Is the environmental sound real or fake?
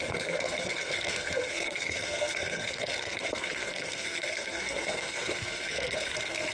fake